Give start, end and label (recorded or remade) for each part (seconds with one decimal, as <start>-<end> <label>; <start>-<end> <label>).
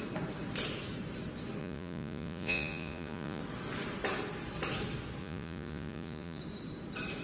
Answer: 0.0-1.6 recorded; 1.6-3.4 remade; 3.4-5.2 recorded; 5.2-6.4 remade; 6.4-7.2 recorded